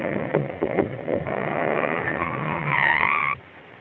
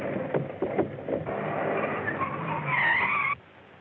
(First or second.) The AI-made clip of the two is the first